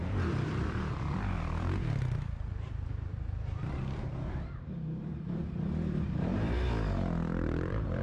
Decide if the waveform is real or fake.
fake